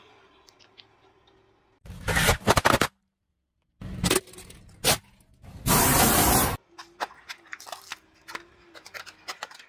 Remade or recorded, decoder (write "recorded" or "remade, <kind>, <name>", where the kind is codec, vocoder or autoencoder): recorded